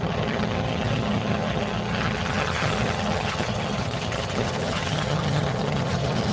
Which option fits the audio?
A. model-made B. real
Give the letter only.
A